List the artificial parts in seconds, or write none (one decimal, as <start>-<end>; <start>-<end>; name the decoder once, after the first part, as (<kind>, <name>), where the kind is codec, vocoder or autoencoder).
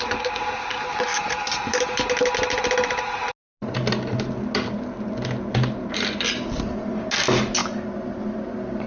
5.8-7.0 (vocoder, BigVGAN v2); 7.6-8.9